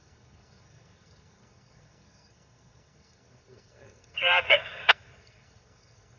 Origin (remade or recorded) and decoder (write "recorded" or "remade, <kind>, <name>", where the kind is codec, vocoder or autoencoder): remade, codec, SNAC